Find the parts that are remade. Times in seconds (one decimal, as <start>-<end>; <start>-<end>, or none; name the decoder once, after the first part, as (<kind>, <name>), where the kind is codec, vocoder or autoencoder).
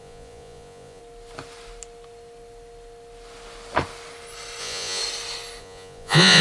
0.0-1.0 (vocoder, Vocos); 4.6-5.0; 5.6-6.4